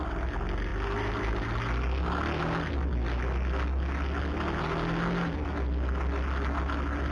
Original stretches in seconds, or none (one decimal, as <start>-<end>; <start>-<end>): 0.0-7.1